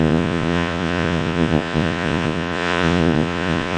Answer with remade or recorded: remade